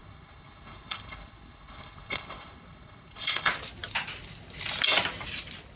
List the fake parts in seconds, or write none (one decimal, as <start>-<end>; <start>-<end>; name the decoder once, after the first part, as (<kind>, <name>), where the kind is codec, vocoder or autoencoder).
0.0-3.5 (codec, HILCodec)